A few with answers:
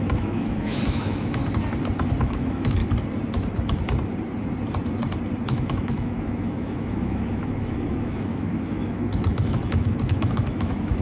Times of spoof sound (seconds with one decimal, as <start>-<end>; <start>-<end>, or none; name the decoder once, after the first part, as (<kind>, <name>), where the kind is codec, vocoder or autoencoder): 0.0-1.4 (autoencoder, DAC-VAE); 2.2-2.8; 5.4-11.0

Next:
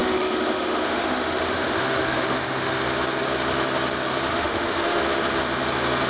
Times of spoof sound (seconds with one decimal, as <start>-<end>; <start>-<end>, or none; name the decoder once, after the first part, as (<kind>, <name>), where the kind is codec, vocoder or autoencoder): 0.0-2.8 (autoencoder, DAC-VAE); 4.3-5.0

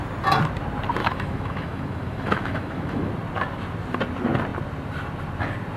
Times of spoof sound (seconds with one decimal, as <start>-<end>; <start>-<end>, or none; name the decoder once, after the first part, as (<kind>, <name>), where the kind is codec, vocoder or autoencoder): 1.0-3.1 (autoencoder, DAC-VAE)

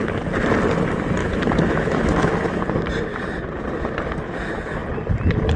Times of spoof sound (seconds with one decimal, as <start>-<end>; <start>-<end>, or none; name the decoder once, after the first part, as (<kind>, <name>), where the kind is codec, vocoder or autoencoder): 1.2-2.6 (autoencoder, DAC-VAE)

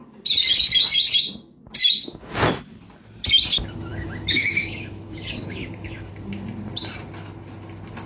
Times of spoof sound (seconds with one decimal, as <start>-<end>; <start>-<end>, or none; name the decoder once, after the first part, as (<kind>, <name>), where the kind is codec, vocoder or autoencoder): 1.8-2.3 (autoencoder, DAC-VAE); 3.9-6.1

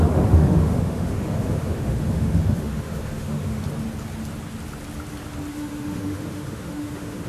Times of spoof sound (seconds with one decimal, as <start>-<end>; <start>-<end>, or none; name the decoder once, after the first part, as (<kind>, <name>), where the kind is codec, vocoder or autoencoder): 0.0-3.6 (autoencoder, DAC-VAE); 5.5-7.3

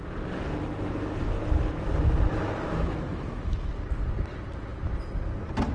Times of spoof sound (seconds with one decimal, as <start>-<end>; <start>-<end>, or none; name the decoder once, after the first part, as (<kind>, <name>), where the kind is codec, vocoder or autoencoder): 2.7-3.7 (autoencoder, DAC-VAE)

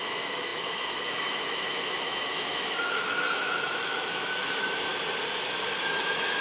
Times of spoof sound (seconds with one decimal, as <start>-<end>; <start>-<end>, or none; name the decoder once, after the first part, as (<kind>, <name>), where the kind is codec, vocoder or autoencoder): 0.0-4.9 (autoencoder, DAC-VAE); 5.8-6.4